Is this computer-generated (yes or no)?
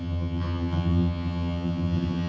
yes